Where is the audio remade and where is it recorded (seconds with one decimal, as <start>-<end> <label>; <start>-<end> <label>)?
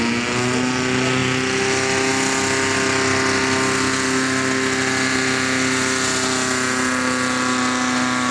0.0-8.3 recorded